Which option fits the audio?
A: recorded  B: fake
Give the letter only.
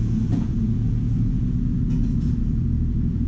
B